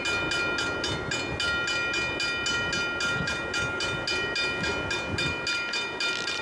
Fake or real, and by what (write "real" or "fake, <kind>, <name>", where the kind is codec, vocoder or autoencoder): real